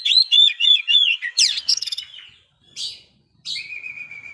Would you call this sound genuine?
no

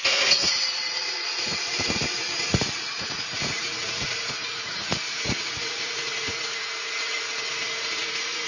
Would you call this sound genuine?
no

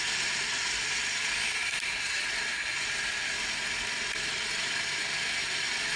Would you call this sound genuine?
yes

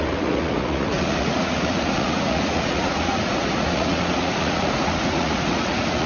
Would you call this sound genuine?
no